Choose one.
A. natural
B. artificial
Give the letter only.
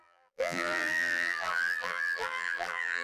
B